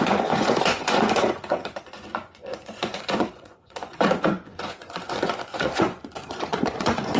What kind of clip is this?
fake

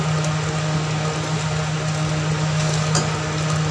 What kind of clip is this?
real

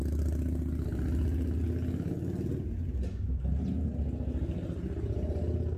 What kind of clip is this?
real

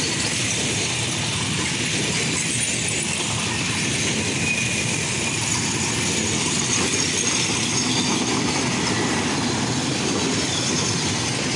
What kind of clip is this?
real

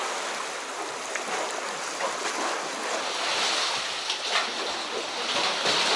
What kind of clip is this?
real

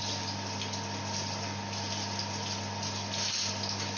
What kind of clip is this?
real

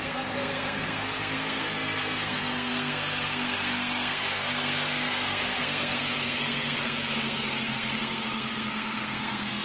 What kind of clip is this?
fake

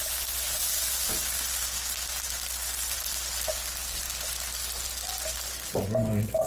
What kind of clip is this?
real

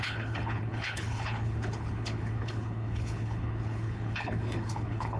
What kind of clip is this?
fake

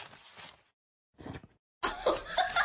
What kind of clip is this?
real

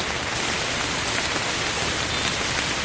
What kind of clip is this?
real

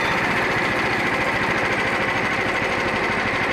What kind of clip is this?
real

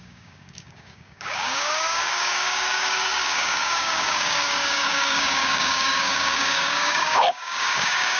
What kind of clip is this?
fake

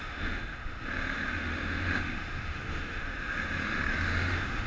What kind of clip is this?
fake